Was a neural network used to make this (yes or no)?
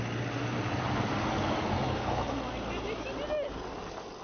no